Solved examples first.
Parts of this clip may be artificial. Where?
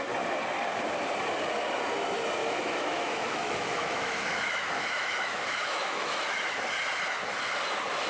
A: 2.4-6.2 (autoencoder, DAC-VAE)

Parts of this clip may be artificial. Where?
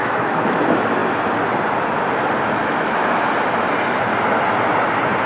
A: 0.0-0.6 (autoencoder, DAC-VAE); 2.6-3.2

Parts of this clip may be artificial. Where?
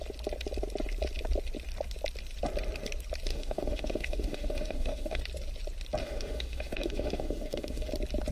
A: 3.3-5.2 (autoencoder, DAC-VAE); 6.0-7.9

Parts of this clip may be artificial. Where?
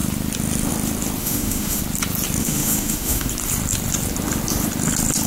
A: 1.2-1.8 (autoencoder, DAC-VAE); 2.4-3.3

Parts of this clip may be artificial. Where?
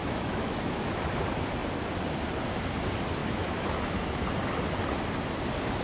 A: 0.0-1.0 (autoencoder, DAC-VAE); 3.2-4.2